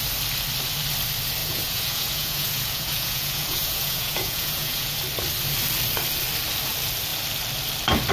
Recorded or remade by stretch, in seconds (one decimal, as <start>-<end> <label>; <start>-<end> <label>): 0.0-1.4 recorded; 1.4-5.0 remade; 5.0-8.1 recorded